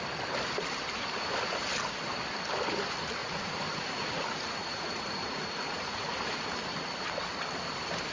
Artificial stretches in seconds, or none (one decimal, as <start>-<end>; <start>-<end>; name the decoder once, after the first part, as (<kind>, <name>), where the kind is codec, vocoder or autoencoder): 3.2-6.1 (vocoder, Vocos)